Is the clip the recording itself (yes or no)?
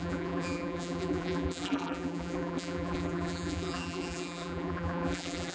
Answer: no